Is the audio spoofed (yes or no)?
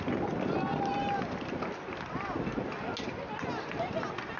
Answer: no